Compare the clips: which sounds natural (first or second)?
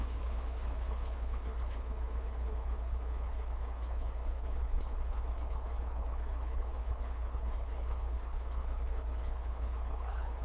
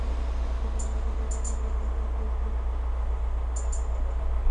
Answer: second